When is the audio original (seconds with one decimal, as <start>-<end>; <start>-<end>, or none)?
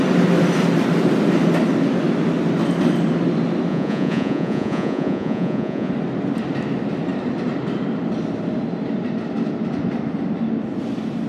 0.0-3.7; 5.9-11.3